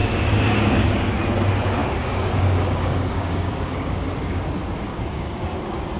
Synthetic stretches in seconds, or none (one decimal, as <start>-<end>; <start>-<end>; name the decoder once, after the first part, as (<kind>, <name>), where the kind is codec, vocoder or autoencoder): 0.0-1.2 (codec, DAC); 1.8-4.4; 4.9-5.6